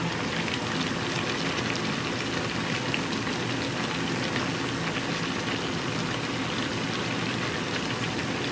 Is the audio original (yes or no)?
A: yes